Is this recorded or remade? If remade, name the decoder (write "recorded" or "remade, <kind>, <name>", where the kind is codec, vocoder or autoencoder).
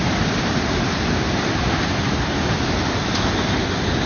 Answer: recorded